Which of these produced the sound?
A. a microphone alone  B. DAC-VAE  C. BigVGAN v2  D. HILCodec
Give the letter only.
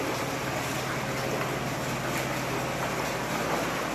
A